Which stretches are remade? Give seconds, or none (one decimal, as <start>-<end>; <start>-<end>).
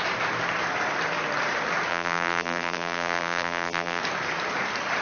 1.9-4.0